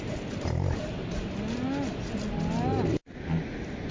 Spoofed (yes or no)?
no